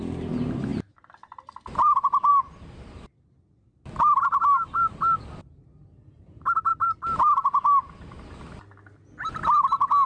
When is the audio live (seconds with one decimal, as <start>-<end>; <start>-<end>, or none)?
0.0-10.1